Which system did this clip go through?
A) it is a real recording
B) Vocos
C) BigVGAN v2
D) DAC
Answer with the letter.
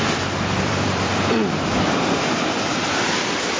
C